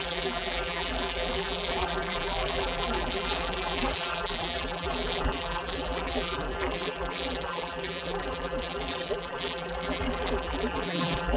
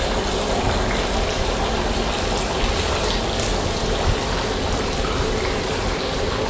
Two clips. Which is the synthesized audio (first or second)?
first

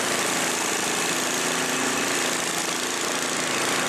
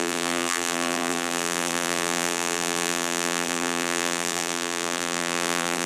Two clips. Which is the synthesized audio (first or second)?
second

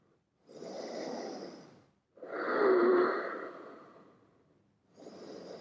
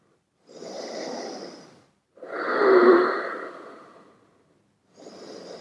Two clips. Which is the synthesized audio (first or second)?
second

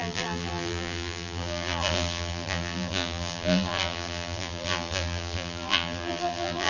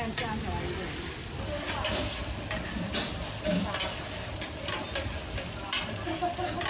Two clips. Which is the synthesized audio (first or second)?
first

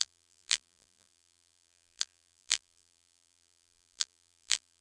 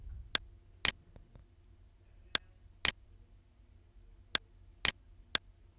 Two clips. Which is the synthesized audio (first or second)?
first